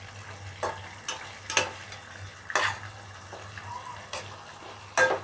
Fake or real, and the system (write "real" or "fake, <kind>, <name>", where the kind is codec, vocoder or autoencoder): real